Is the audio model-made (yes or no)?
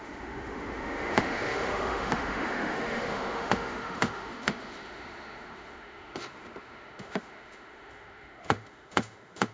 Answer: yes